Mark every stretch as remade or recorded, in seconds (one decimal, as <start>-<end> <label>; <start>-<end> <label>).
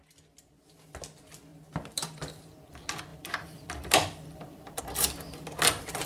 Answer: 0.0-1.5 recorded; 1.5-2.4 remade; 2.4-3.1 recorded; 3.1-4.8 remade; 4.8-6.1 recorded